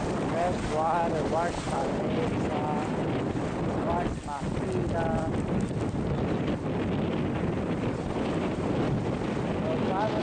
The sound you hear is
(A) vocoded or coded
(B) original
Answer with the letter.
B